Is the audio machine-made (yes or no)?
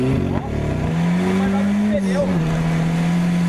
no